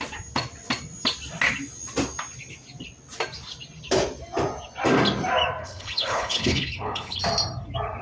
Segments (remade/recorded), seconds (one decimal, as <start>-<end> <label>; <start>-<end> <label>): 0.0-5.6 recorded; 5.6-7.2 remade; 7.2-8.0 recorded